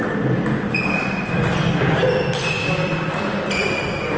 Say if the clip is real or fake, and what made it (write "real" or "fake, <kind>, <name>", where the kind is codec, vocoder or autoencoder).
real